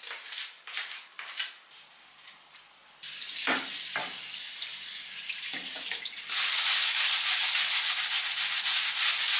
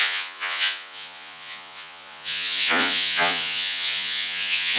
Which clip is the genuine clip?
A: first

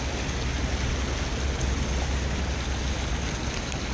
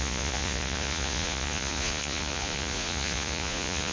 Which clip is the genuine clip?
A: first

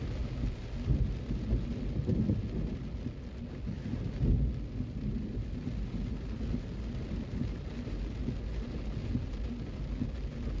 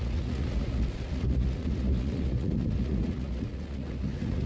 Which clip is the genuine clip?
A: first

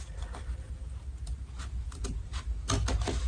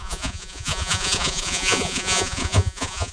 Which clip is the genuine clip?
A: first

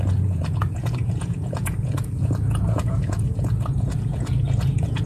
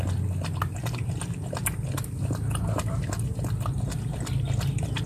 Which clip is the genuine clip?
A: second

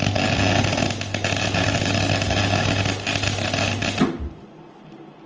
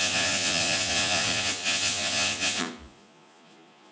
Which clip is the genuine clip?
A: first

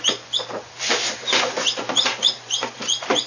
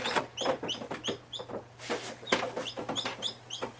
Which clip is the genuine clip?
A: second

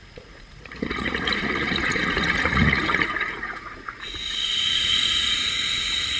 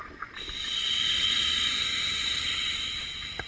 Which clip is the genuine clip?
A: second